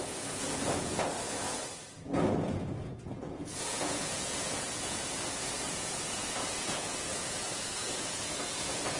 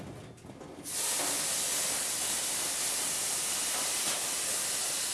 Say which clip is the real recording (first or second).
second